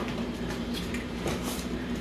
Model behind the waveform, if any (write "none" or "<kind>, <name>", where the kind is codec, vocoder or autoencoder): vocoder, BigVGAN v2